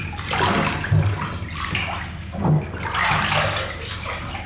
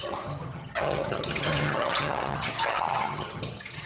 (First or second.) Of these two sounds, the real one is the first